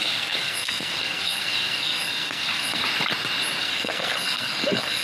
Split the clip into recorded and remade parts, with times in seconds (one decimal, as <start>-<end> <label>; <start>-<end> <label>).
0.0-2.8 remade; 2.8-3.6 recorded; 3.6-5.0 remade